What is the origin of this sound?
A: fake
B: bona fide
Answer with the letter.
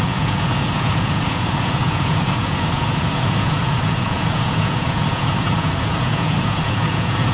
A